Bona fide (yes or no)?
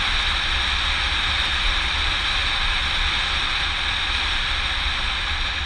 yes